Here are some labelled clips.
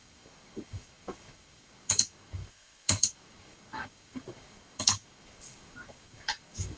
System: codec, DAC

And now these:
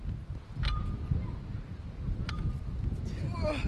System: none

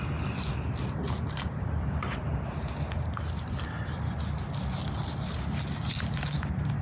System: none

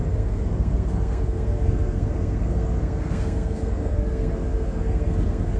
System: codec, SNAC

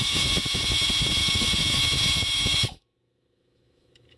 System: autoencoder, DAC-VAE